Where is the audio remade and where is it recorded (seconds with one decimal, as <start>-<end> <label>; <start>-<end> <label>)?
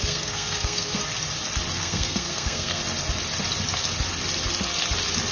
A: 0.0-1.0 remade; 1.0-1.8 recorded; 1.8-2.8 remade; 2.8-5.3 recorded